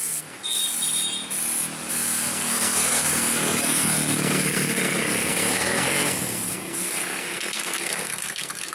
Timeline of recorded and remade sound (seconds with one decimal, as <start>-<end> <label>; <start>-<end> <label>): 0.0-0.6 remade; 0.6-1.9 recorded; 1.9-8.7 remade